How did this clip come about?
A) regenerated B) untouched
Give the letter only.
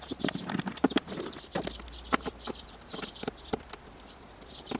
B